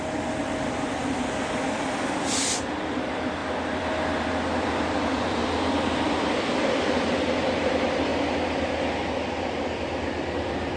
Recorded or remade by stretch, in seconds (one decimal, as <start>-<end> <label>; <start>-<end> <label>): 0.0-8.1 remade; 8.1-10.0 recorded; 10.0-10.8 remade